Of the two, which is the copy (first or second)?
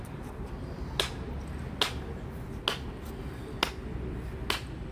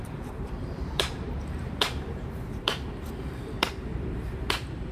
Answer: second